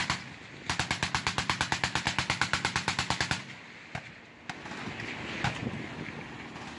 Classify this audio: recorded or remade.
recorded